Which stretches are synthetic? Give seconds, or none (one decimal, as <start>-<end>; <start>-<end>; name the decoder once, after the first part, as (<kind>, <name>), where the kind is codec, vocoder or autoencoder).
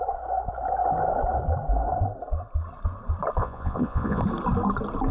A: 3.4-4.2 (vocoder, Vocos)